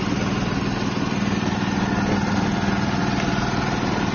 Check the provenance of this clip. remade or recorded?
recorded